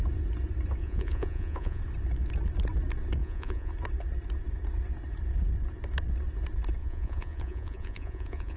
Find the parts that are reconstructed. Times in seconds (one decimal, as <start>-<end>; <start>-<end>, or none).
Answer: 0.8-1.8; 3.2-3.7; 6.8-8.6